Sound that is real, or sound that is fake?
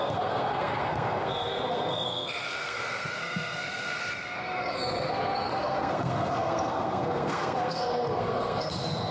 fake